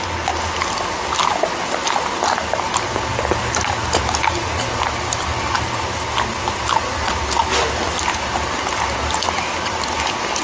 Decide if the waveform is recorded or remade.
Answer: recorded